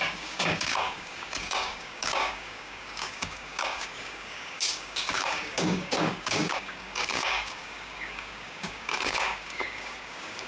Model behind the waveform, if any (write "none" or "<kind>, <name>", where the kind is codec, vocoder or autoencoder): codec, DAC